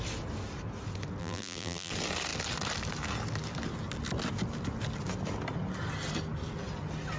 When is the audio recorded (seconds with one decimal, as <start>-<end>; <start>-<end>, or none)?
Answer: 0.0-1.2; 1.9-7.2